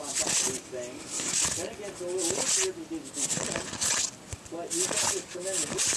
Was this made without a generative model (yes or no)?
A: yes